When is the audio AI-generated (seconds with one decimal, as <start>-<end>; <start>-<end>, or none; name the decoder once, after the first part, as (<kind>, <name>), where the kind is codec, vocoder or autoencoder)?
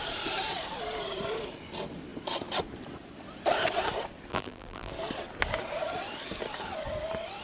4.3-4.9 (vocoder, BigVGAN v2)